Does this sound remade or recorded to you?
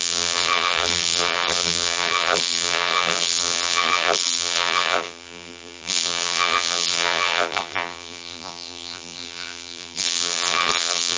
remade